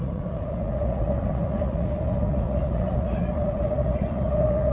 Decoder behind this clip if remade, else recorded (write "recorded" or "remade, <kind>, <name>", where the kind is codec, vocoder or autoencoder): remade, vocoder, Vocos